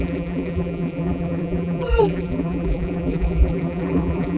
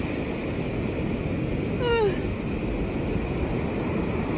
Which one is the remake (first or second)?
first